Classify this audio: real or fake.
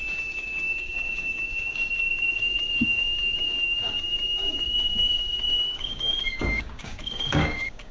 fake